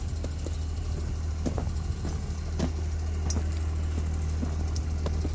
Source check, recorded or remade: recorded